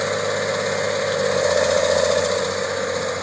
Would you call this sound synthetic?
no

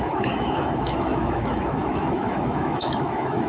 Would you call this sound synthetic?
yes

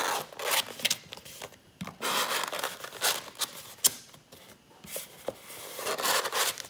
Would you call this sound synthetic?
no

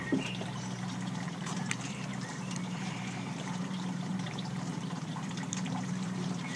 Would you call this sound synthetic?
yes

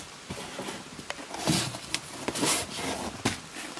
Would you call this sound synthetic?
no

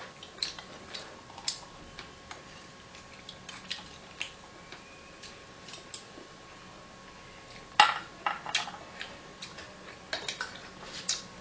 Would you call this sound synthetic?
no